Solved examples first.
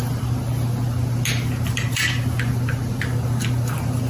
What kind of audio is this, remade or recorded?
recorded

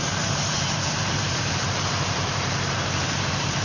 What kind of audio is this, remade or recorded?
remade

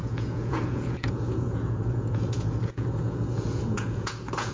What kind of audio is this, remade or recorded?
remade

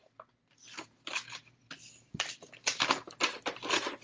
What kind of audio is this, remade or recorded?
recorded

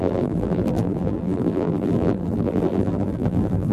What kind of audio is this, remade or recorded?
remade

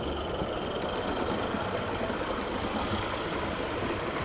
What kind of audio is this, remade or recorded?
recorded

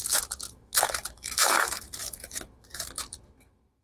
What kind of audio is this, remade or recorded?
remade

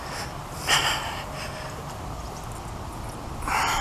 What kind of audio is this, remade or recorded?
recorded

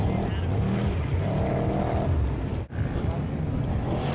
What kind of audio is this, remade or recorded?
recorded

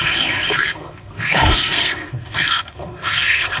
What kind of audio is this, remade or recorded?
remade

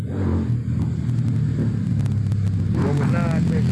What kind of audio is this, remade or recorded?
recorded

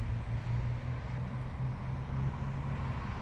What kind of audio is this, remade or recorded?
recorded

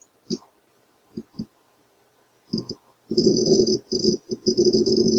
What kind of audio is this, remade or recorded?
recorded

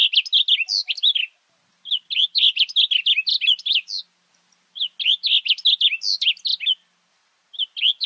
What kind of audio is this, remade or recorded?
recorded